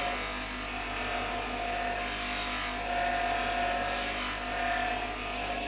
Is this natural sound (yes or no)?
yes